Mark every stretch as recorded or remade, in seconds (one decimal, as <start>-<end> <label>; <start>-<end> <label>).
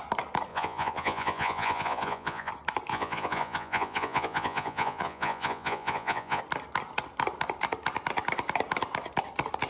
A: 0.0-0.5 recorded; 0.5-2.5 remade; 2.5-2.9 recorded; 2.9-6.4 remade; 6.4-9.7 recorded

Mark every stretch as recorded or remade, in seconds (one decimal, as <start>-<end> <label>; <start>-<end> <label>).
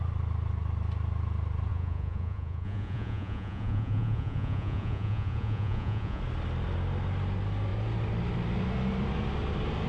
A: 0.0-1.7 recorded; 1.7-6.2 remade; 6.2-9.9 recorded